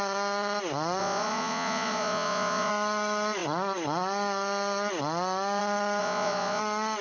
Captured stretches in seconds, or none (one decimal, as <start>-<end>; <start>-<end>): 0.0-1.0; 2.7-6.0; 6.6-7.0